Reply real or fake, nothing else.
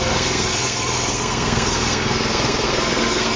fake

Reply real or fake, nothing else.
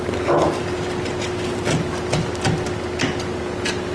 real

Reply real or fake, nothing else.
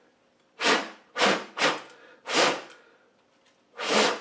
fake